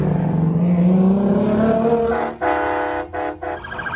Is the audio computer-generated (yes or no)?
no